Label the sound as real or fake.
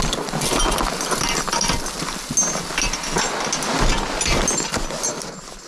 real